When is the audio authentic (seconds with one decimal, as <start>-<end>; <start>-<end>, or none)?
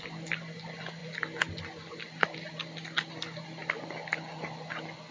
0.0-5.1